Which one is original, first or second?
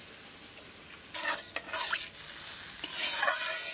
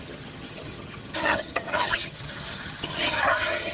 first